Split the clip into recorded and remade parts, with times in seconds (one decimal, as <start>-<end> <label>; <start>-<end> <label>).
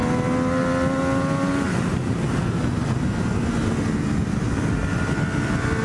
0.0-5.8 recorded